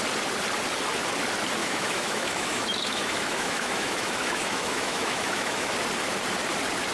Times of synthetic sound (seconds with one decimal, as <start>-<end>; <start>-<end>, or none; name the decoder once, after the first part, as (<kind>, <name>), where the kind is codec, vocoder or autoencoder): 1.6-5.7 (autoencoder, DAC-VAE)